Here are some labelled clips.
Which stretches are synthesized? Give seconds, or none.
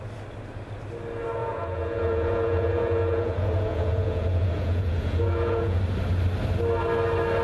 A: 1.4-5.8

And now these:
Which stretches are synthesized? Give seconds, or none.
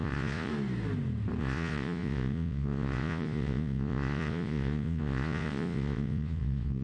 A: 0.0-0.5; 1.4-6.8